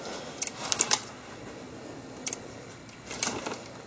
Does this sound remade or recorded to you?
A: recorded